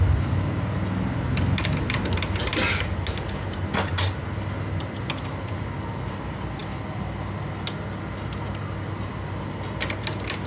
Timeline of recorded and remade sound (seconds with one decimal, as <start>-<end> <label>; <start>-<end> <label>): 0.0-10.5 recorded